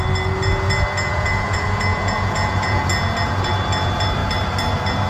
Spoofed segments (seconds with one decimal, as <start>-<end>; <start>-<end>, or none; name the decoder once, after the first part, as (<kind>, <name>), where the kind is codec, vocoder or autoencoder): 1.1-2.8 (vocoder, Vocos)